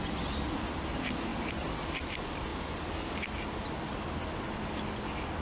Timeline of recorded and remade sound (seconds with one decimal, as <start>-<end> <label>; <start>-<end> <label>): 0.0-5.4 recorded